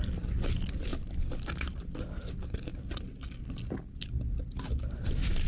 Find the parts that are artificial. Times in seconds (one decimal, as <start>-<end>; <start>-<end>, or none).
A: none